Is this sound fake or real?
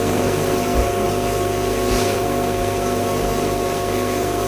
fake